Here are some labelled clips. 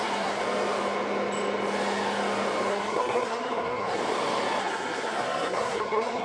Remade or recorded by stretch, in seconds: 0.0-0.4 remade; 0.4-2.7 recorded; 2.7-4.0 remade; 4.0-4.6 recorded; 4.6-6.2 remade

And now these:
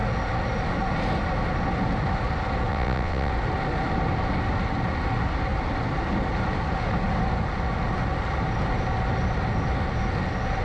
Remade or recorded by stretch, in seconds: 0.0-2.7 recorded; 2.7-3.3 remade; 3.3-10.6 recorded

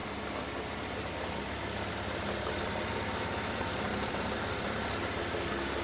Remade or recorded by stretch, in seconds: 0.0-3.9 recorded; 3.9-4.9 remade; 4.9-5.8 recorded